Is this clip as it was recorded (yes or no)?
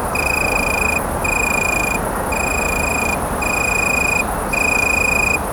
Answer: yes